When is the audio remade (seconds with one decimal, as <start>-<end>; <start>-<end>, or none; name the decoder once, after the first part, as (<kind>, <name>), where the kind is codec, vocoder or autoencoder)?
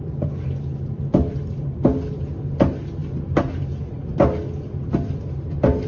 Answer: none